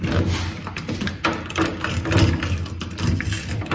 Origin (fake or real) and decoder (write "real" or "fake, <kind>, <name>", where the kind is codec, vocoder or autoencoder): real